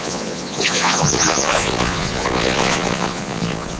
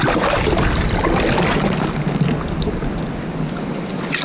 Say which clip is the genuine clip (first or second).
second